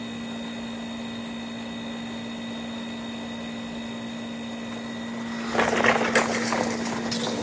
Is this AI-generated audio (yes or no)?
no